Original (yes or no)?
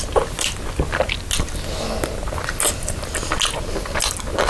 yes